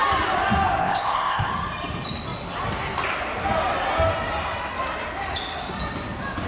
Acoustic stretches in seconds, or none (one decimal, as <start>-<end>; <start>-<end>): 0.0-0.8; 1.5-6.5